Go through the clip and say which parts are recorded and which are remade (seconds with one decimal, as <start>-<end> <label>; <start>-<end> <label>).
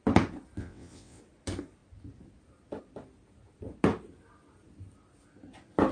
0.0-0.6 recorded; 0.6-1.2 remade; 1.2-5.9 recorded